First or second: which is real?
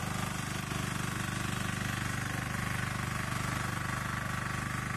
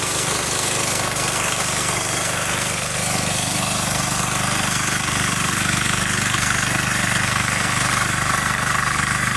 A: first